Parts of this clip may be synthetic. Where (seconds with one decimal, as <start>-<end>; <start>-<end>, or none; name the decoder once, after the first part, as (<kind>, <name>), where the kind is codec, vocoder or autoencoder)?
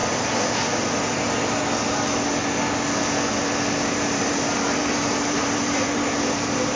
3.9-6.8 (vocoder, BigVGAN v2)